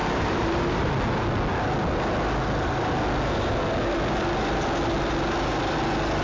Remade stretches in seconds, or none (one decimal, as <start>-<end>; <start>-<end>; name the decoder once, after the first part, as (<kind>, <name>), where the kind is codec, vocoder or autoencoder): 0.0-0.9 (vocoder, BigVGAN v2)